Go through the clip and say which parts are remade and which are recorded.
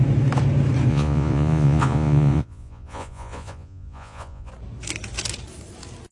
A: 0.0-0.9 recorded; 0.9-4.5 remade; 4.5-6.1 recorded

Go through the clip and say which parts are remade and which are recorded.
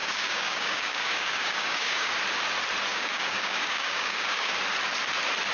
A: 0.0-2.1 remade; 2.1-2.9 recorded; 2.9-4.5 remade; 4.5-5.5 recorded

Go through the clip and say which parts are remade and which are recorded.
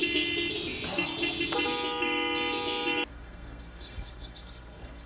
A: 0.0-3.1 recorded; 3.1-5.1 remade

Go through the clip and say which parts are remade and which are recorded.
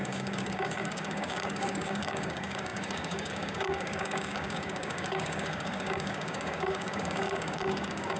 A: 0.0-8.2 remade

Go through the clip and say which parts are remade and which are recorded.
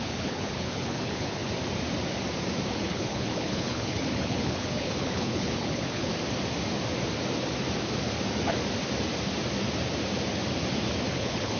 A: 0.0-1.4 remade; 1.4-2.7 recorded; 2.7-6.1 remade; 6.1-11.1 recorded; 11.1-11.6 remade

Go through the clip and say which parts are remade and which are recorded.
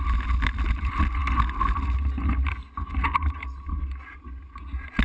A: 0.0-5.0 recorded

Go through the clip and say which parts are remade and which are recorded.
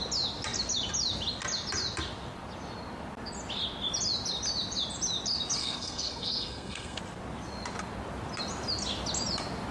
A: 0.0-5.6 recorded; 5.6-7.0 remade; 7.0-9.7 recorded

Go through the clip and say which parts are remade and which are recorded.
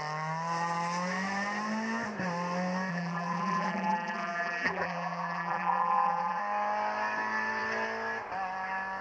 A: 0.0-2.9 recorded; 2.9-6.4 remade; 6.4-9.0 recorded